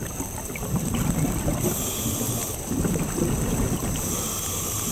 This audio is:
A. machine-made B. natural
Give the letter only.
B